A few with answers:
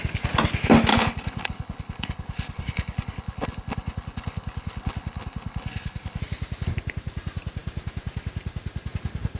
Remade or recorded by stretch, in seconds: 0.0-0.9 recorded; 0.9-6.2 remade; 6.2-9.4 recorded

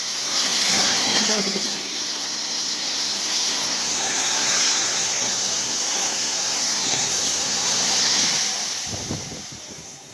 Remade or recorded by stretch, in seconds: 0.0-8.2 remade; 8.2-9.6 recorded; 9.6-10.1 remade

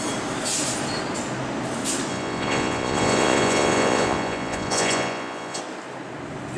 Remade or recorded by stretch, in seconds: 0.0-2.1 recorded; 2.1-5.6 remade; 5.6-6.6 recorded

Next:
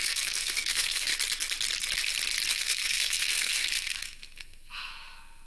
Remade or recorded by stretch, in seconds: 0.0-1.1 remade; 1.1-2.5 recorded; 2.5-5.5 remade

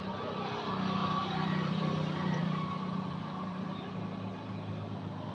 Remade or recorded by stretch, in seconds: 0.0-1.0 recorded; 1.0-4.0 remade; 4.0-5.3 recorded

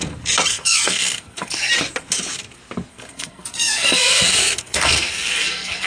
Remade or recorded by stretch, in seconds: 0.0-0.5 recorded; 0.5-1.7 remade; 1.7-2.9 recorded; 2.9-5.9 remade

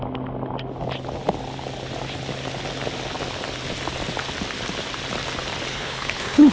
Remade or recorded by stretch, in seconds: 0.0-5.7 recorded; 5.7-6.5 remade